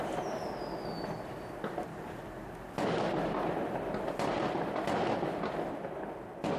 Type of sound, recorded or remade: recorded